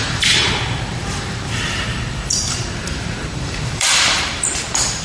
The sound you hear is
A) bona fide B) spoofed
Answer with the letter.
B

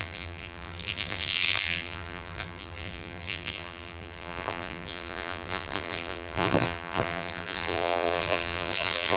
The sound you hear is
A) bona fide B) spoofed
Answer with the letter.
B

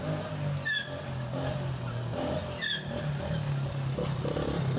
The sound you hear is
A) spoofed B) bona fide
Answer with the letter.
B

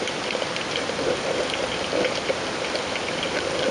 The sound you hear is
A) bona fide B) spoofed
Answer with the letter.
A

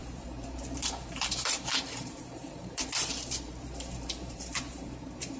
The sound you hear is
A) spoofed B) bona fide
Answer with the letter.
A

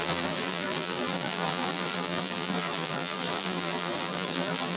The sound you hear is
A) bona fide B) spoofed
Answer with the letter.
B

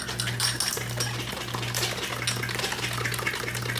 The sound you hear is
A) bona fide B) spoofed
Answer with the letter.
A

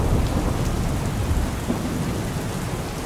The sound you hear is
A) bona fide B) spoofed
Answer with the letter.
A